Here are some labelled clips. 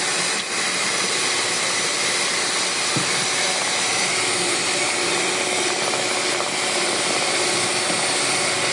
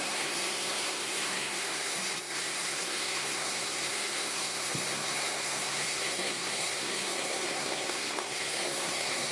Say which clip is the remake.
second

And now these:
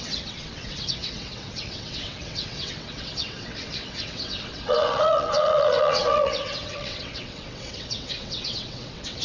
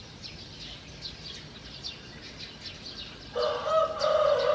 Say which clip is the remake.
first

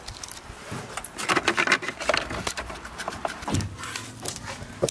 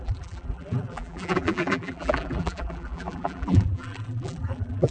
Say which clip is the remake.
second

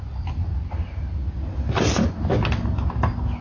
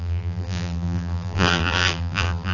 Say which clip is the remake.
second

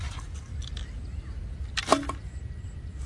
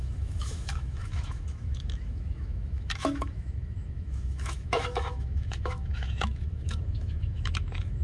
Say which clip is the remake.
second